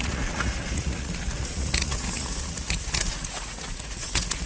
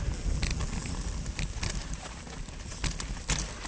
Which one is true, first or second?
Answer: second